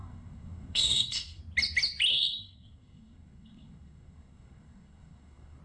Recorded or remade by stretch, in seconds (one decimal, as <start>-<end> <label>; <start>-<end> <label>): 0.0-1.4 remade; 1.4-2.1 recorded; 2.1-5.6 remade